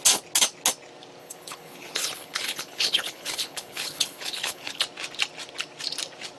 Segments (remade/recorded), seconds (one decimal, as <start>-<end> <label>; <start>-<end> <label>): 0.0-1.2 recorded; 1.2-4.8 remade; 4.8-6.4 recorded